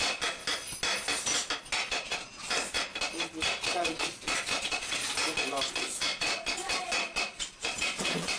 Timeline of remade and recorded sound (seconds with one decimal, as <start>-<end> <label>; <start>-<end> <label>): 0.0-0.4 remade; 0.4-1.9 recorded; 1.9-2.9 remade; 2.9-3.7 recorded; 3.7-5.0 remade; 5.0-5.7 recorded; 5.7-8.4 remade

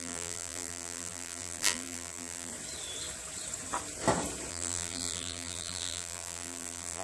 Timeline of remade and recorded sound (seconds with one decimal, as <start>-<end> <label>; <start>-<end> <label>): 0.0-2.5 remade; 2.5-4.5 recorded; 4.5-7.0 remade

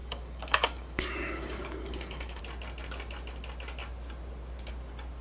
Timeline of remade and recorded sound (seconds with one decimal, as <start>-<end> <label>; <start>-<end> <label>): 0.0-2.4 remade; 2.4-5.2 recorded

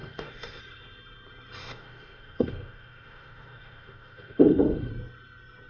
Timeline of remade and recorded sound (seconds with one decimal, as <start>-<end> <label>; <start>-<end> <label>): 0.0-0.6 remade; 0.6-1.6 recorded; 1.6-4.9 remade; 4.9-5.7 recorded

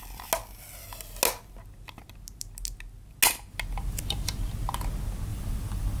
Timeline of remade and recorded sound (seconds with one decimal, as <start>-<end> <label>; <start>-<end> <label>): 0.0-5.3 recorded; 5.3-6.0 remade